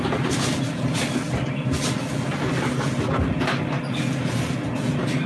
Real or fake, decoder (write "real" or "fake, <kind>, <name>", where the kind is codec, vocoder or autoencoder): real